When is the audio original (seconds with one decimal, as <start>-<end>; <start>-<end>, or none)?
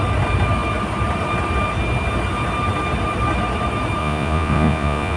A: 0.0-4.0